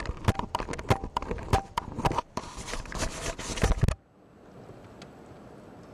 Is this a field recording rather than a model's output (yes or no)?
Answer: yes